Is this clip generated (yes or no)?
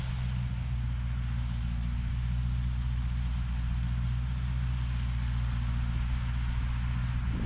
no